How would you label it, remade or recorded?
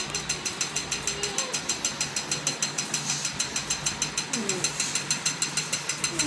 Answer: recorded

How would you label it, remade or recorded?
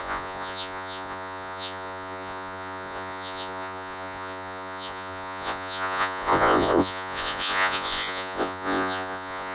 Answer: remade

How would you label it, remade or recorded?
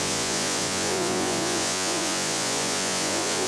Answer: remade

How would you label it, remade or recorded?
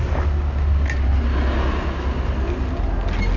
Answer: recorded